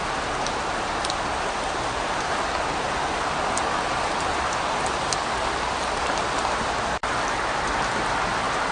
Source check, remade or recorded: recorded